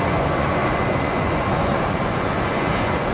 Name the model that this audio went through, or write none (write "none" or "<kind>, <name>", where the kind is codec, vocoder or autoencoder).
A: vocoder, Vocos